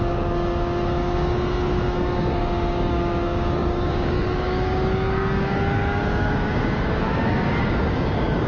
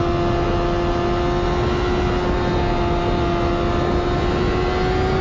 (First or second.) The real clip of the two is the second